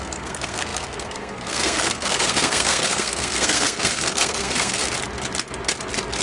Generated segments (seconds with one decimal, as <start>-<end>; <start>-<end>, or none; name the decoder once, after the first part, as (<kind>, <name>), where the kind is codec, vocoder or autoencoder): 0.0-4.8 (codec, SNAC)